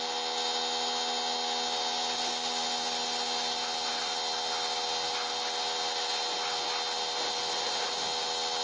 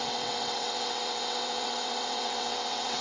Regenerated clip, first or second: second